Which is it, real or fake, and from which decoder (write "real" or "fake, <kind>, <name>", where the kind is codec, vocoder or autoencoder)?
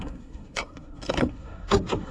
fake, codec, SNAC